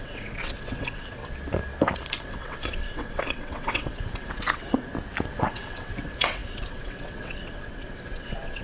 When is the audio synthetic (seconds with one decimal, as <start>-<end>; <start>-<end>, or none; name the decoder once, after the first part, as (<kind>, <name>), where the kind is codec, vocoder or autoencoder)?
0.0-1.2 (vocoder, WaveNeXt); 2.2-4.9; 5.4-8.6